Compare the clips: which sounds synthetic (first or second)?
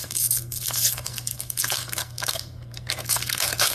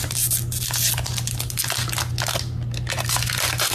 first